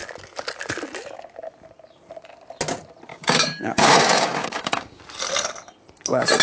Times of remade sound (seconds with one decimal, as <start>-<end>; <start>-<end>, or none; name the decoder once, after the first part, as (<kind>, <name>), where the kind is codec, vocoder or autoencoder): 3.1-5.0 (codec, DAC)